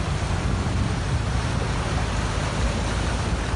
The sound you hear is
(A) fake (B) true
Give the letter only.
A